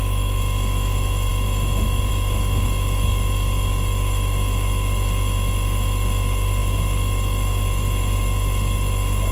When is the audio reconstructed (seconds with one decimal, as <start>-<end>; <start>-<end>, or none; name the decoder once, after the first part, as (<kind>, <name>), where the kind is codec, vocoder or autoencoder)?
0.0-9.3 (autoencoder, DAC-VAE)